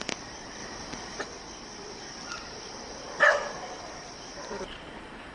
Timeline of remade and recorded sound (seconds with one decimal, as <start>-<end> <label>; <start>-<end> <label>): 0.0-5.3 remade